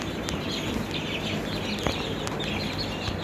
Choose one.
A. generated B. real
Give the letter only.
B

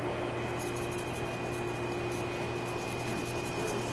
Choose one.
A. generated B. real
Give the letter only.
B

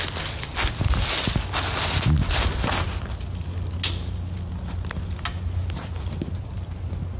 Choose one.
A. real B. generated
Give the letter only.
A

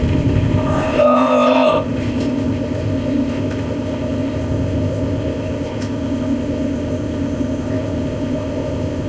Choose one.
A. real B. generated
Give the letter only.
B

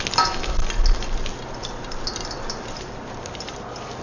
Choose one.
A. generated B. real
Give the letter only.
B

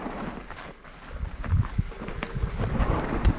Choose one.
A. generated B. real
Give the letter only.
B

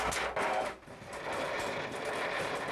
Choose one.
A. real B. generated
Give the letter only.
A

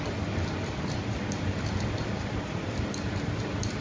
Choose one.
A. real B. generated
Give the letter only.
A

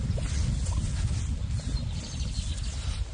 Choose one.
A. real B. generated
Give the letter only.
A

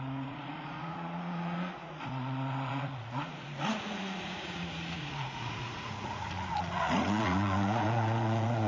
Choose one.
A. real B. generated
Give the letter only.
B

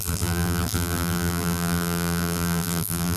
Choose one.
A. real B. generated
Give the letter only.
B